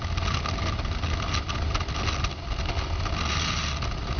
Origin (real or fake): real